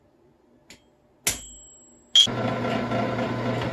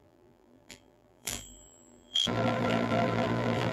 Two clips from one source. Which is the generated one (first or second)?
second